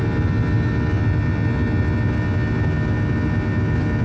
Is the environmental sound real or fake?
real